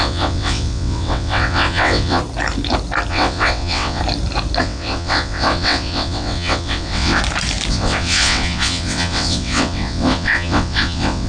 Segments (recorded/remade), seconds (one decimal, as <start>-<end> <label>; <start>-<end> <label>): 0.0-2.2 remade; 2.2-3.1 recorded; 3.1-4.0 remade; 4.0-4.6 recorded; 4.6-7.2 remade; 7.2-7.7 recorded; 7.7-11.3 remade